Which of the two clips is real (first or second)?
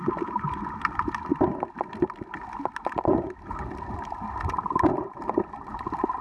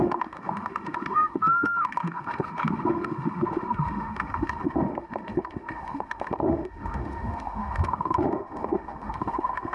first